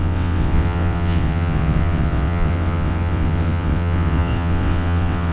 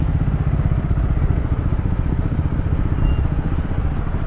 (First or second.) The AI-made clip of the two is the first